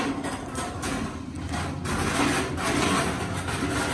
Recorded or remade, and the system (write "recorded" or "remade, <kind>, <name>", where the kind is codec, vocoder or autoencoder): recorded